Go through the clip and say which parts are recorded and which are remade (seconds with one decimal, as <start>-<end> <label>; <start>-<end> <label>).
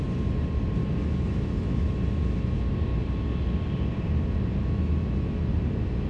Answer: 0.0-0.8 recorded; 0.8-1.9 remade; 1.9-4.6 recorded; 4.6-5.4 remade; 5.4-6.1 recorded